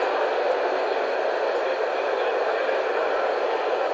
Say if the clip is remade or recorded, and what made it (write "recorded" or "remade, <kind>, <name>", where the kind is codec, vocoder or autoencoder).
recorded